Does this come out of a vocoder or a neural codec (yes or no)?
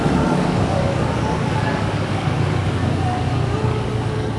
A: yes